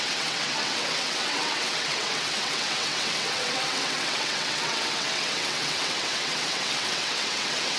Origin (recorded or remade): remade